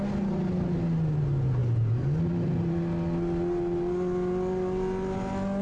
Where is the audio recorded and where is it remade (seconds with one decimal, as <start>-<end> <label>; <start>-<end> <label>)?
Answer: 0.0-5.6 recorded